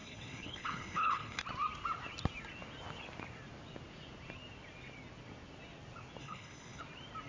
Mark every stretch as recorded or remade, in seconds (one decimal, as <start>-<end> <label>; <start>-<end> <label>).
0.0-1.4 remade; 1.4-6.2 recorded; 6.2-6.8 remade; 6.8-7.3 recorded